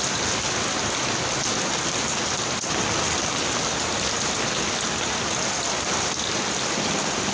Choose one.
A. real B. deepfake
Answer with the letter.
A